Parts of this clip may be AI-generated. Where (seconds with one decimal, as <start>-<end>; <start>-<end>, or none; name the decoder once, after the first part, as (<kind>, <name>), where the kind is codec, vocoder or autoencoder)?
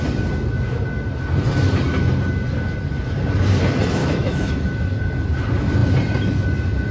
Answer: 4.0-4.5 (autoencoder, DAC-VAE)